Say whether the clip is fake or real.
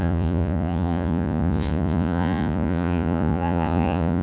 fake